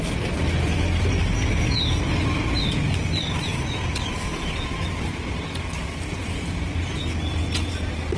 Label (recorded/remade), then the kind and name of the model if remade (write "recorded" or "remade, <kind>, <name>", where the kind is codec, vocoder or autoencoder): recorded